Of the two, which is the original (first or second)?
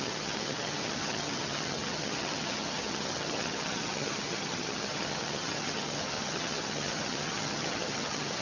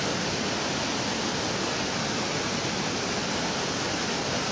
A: second